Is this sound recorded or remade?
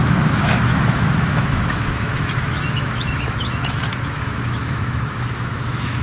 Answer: remade